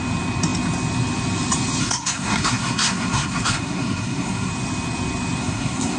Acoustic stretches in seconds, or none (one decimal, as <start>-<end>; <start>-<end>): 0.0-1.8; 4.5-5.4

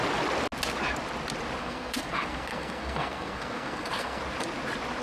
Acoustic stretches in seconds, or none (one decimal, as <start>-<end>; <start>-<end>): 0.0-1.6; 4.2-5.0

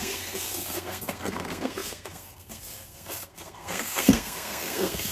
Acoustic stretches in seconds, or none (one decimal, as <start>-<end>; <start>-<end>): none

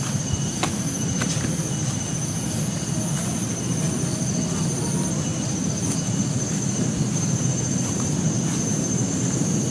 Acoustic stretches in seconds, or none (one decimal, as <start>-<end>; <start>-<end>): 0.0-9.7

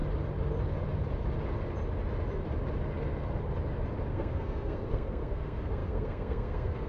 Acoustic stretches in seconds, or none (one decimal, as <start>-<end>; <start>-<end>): 0.0-4.1